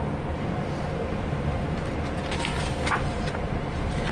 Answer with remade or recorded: recorded